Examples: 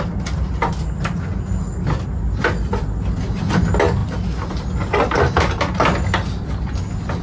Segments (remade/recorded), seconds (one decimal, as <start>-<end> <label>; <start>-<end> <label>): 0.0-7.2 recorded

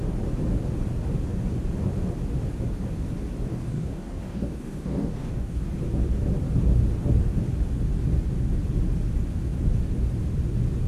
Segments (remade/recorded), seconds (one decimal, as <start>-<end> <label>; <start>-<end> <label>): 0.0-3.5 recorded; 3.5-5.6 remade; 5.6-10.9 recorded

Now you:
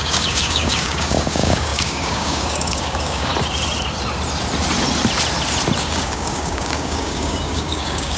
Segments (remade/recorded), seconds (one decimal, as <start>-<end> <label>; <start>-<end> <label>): 0.0-3.3 remade; 3.3-5.8 recorded; 5.8-8.2 remade

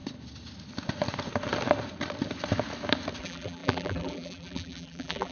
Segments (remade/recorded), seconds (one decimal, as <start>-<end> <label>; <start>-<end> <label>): 0.0-3.2 recorded; 3.2-5.3 remade